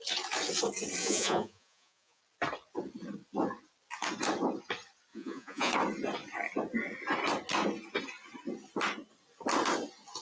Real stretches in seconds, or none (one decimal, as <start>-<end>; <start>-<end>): 0.0-1.0; 2.2-5.1; 5.7-10.2